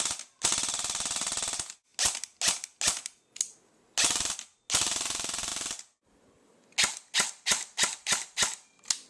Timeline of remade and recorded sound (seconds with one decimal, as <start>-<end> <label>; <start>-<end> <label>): 0.0-9.1 recorded

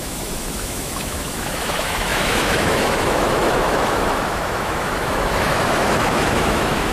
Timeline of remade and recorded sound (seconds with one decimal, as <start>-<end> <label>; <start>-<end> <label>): 0.0-6.9 remade

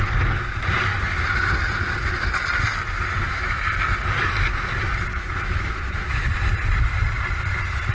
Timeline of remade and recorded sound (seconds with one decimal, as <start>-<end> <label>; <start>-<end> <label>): 0.0-3.2 recorded; 3.2-3.7 remade; 3.7-5.1 recorded; 5.1-6.3 remade; 6.3-7.9 recorded

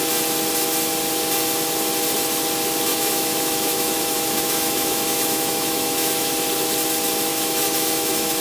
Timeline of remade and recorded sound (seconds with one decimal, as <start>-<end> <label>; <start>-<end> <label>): 0.0-2.9 recorded; 2.9-6.3 remade; 6.3-7.3 recorded; 7.3-8.4 remade

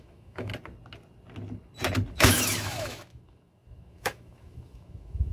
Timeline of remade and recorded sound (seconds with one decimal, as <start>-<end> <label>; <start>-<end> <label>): 0.0-0.5 remade; 0.5-2.1 recorded; 2.1-5.3 remade

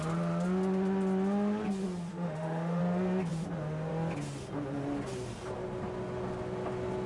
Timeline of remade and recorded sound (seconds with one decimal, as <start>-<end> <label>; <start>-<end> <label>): 0.0-2.1 recorded; 2.1-2.8 remade; 2.8-7.1 recorded

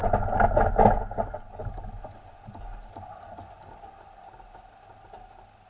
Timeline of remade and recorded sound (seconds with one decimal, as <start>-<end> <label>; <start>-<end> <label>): 0.0-5.7 recorded